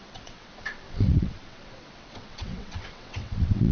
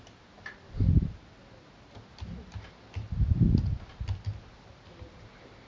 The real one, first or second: second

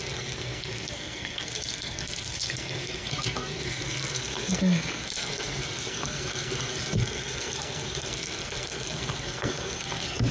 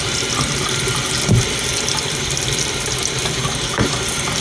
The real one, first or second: second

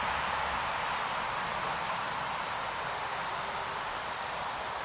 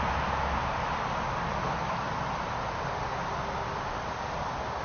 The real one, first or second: second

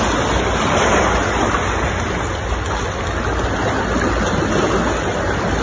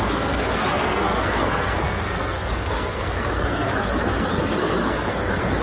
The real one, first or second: first